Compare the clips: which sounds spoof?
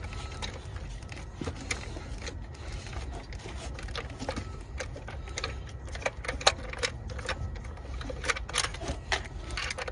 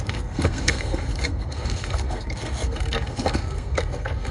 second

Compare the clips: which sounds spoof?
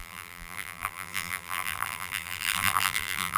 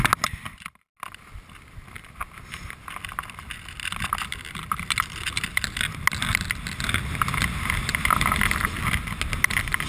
first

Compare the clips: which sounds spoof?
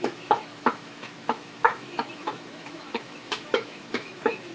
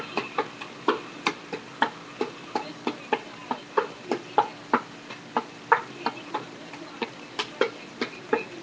first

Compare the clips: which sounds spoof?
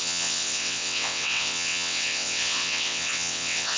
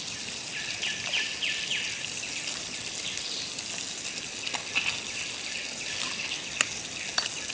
first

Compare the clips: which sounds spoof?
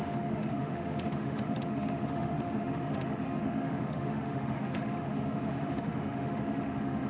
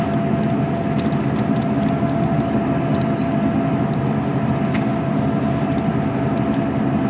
first